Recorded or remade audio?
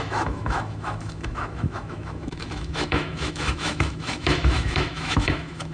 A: remade